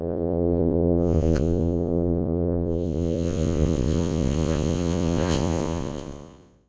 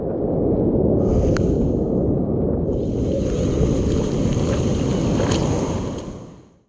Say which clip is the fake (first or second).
first